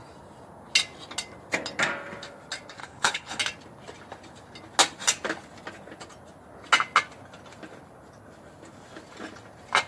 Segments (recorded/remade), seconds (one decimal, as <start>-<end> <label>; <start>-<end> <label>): 0.0-2.8 recorded; 2.8-3.4 remade; 3.4-9.9 recorded